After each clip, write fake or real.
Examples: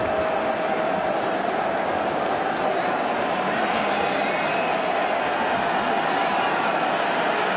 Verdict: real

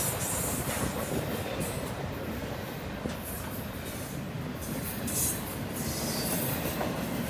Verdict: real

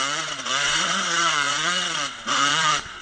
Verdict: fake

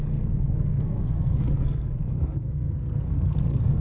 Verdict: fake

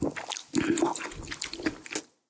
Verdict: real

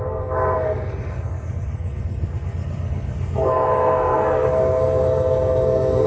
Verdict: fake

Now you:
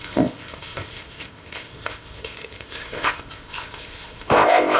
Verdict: fake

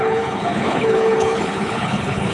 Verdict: fake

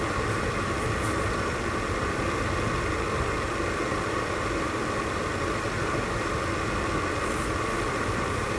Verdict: real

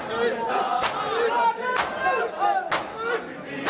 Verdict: real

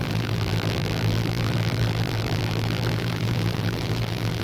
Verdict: fake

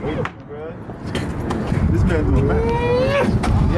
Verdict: real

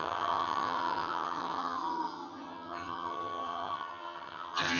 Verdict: fake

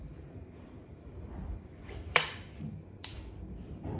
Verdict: fake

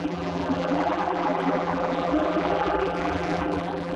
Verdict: fake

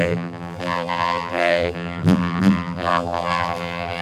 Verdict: fake